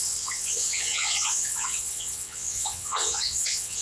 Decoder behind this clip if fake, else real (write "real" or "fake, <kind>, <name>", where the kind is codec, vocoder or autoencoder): fake, vocoder, WaveNeXt